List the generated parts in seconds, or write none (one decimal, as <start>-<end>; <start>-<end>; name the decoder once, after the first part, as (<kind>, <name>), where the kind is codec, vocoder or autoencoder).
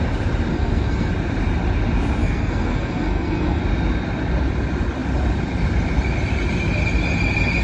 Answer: 0.5-1.1 (codec, SNAC); 2.2-3.6